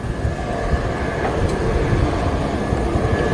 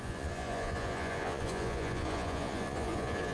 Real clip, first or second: first